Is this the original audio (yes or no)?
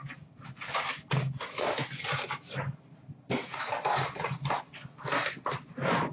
yes